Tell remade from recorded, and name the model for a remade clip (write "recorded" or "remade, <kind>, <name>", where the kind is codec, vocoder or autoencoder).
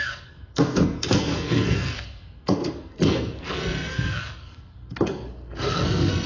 remade, codec, SNAC